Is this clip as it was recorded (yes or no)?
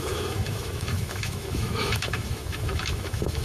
no